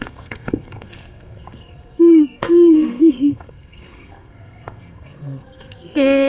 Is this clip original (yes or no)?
no